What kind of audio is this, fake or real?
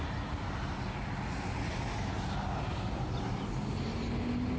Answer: real